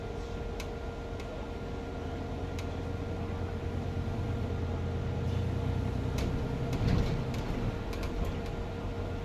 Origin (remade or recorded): recorded